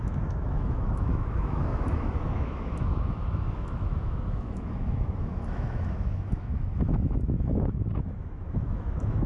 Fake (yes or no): yes